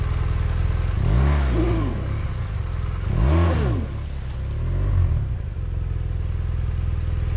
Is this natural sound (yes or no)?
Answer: yes